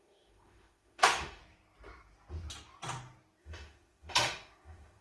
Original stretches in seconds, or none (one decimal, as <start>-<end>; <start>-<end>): 1.4-3.4